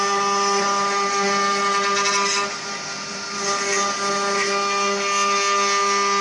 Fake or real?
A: real